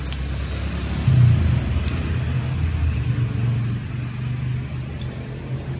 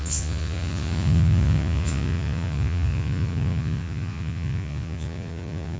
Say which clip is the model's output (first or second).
second